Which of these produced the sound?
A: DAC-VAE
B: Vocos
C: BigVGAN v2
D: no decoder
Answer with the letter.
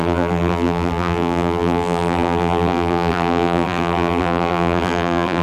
C